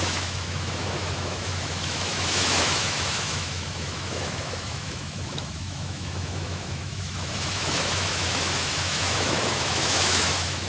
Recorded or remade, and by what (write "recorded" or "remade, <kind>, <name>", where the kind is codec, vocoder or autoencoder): remade, autoencoder, DAC-VAE